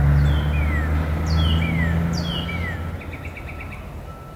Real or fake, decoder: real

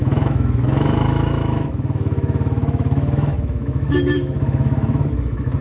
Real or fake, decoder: fake, autoencoder, DAC-VAE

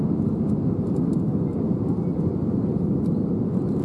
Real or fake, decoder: real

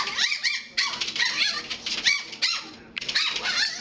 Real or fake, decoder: real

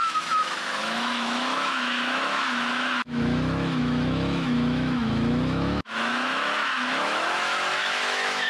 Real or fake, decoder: fake, autoencoder, DAC-VAE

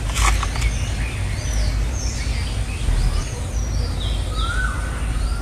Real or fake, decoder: real